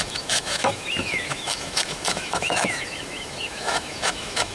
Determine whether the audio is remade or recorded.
remade